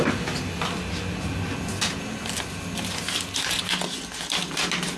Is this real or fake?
real